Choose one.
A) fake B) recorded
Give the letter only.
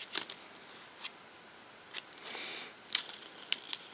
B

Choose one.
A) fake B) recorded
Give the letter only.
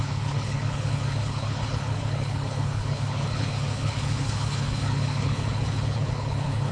A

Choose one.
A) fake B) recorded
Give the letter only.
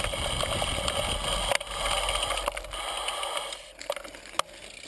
B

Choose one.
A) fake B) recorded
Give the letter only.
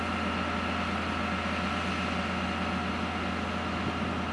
B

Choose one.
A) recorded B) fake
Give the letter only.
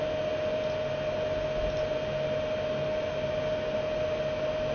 A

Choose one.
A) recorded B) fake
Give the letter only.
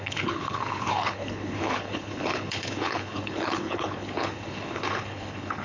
B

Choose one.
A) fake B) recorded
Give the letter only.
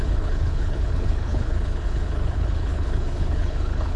A